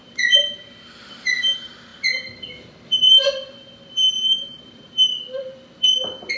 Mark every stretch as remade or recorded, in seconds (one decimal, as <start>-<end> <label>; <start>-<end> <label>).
0.0-1.9 recorded; 1.9-5.2 remade; 5.2-6.4 recorded